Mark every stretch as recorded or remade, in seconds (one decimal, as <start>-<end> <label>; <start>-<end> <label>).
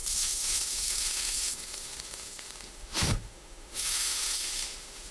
0.0-5.1 remade